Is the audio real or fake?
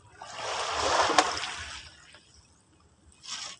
real